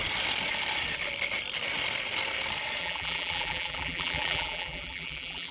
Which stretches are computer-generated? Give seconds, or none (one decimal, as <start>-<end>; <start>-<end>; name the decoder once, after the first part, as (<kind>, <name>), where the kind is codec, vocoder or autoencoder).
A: 2.8-5.5 (vocoder, BigVGAN v2)